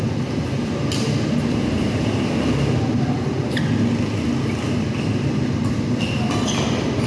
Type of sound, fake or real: real